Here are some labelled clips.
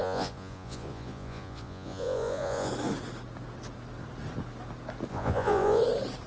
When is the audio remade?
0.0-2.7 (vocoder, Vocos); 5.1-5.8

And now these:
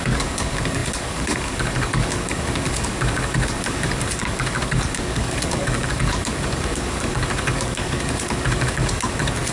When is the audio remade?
0.0-9.5 (codec, DAC)

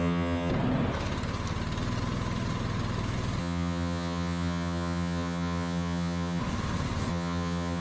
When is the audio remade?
0.0-0.5 (vocoder, HiFi-GAN); 3.4-6.4; 7.1-7.8

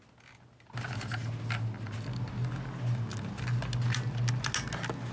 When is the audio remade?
none

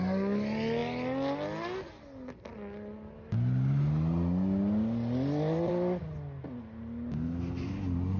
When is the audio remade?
none

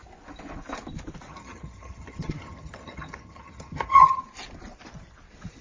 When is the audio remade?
1.3-4.2 (vocoder, HiFi-GAN)

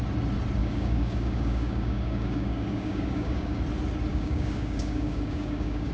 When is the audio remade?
0.6-3.6 (codec, DAC); 4.1-5.9